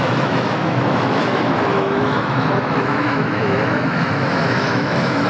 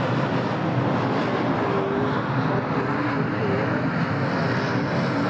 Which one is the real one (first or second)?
second